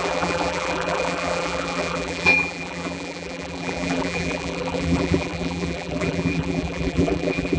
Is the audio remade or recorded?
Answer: remade